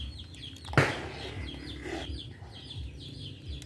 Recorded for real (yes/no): yes